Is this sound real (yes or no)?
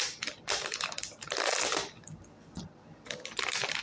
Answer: yes